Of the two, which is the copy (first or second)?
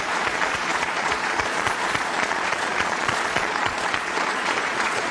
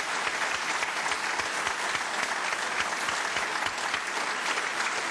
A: first